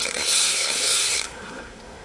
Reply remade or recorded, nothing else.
remade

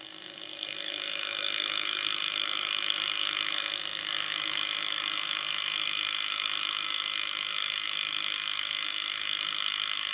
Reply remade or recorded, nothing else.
remade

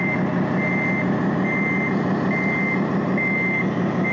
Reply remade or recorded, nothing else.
recorded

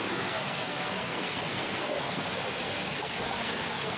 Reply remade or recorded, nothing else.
remade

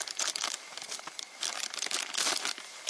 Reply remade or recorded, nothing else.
recorded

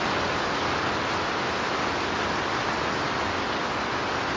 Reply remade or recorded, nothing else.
recorded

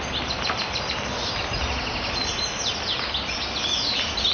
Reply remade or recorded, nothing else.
recorded